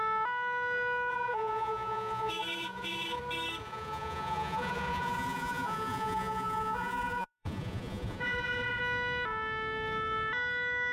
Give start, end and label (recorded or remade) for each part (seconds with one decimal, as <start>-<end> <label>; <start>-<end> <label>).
0.0-1.1 recorded; 1.1-3.2 remade; 3.2-3.6 recorded; 3.6-8.8 remade; 8.8-10.9 recorded